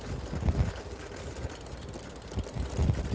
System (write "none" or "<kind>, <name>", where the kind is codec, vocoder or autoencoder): none